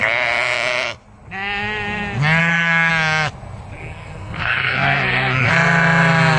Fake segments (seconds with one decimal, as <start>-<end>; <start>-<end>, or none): 2.4-2.9; 3.8-5.5